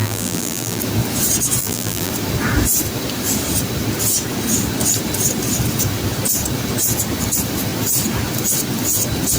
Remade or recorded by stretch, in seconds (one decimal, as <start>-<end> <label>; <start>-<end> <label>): 0.0-0.8 remade; 0.8-1.6 recorded; 1.6-2.1 remade; 2.1-9.4 recorded